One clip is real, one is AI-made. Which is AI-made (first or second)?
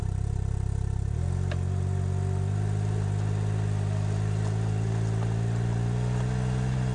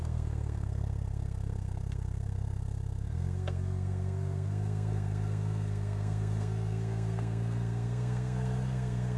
second